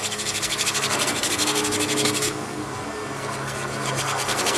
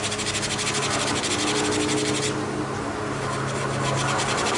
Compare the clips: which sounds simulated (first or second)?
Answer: first